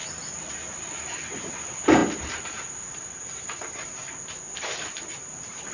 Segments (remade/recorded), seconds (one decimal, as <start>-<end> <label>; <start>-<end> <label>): 0.0-5.7 recorded